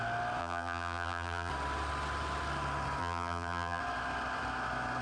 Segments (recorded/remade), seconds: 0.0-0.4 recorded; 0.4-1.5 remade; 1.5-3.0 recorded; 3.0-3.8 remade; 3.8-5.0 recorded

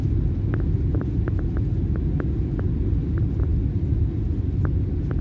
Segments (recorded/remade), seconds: 0.0-5.2 recorded